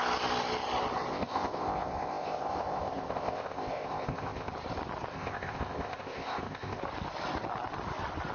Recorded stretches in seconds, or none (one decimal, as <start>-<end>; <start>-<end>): 0.0-1.1; 4.5-5.1; 6.8-8.3